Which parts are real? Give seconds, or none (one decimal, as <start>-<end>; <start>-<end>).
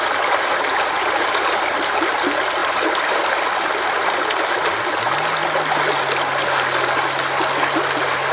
0.0-2.6; 4.5-5.4; 6.6-8.3